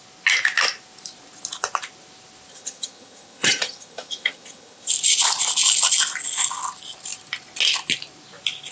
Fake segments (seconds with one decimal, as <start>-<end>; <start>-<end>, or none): 2.5-4.9